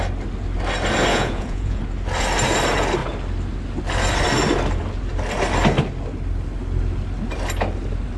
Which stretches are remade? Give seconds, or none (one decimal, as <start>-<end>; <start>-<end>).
1.1-1.8